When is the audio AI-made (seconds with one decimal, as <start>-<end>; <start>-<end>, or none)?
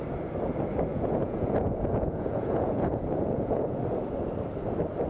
0.9-3.8